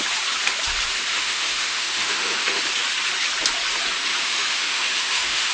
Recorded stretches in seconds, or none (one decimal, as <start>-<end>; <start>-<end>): 0.0-1.1; 2.6-4.1